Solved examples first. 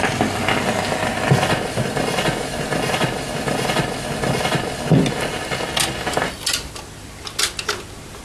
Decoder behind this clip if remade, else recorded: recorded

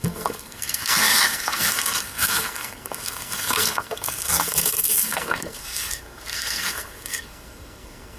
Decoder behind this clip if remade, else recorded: remade, codec, SNAC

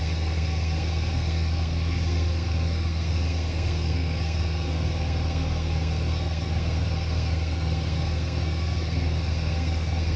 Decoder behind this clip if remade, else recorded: remade, codec, SNAC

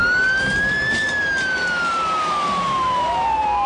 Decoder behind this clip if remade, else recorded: recorded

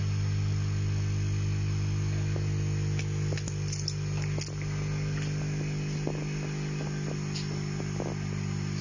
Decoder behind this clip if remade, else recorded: recorded